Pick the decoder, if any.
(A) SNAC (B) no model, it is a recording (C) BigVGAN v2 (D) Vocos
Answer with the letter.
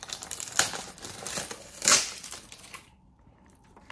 C